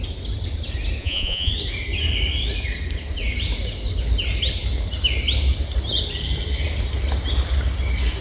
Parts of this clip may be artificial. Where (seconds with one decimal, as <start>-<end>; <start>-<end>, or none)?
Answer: 1.0-1.5